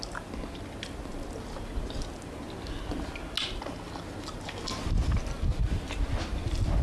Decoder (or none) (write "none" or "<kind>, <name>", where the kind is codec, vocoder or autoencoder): none